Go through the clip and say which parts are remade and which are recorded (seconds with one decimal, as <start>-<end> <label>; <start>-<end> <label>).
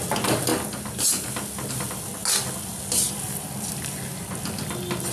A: 0.0-5.1 recorded